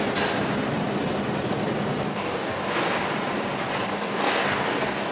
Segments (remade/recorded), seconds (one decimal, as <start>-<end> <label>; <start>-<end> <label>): 0.0-2.1 recorded; 2.1-2.6 remade; 2.6-3.9 recorded; 3.9-5.1 remade